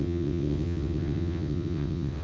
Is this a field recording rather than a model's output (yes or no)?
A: no